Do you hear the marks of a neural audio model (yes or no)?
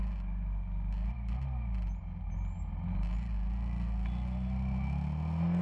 no